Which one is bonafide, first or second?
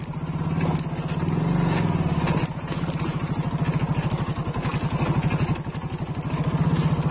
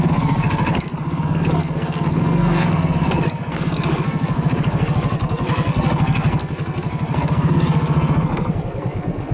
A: first